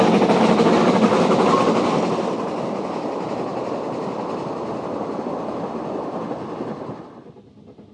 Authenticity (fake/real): real